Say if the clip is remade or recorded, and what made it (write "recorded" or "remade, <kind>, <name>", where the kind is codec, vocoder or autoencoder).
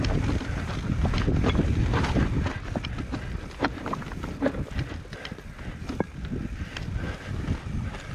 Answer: recorded